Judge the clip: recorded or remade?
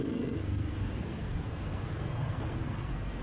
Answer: remade